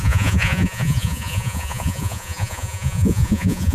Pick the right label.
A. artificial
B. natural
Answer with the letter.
A